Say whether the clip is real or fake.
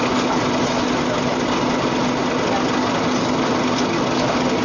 real